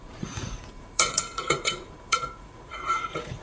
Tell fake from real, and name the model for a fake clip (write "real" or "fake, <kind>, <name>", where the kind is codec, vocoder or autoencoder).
fake, vocoder, Vocos